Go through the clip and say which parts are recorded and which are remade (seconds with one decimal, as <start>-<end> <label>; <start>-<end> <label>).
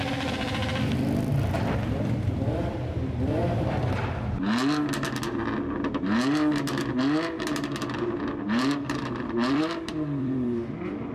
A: 0.0-3.4 remade; 3.4-7.8 recorded; 7.8-11.1 remade